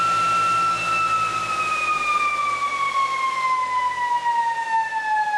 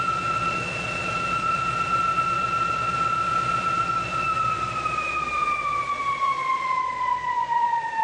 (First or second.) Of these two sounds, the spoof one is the second